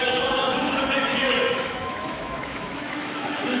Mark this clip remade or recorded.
remade